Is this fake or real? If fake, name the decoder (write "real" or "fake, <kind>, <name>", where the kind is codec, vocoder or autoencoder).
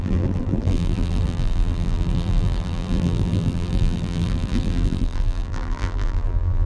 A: fake, vocoder, BigVGAN v2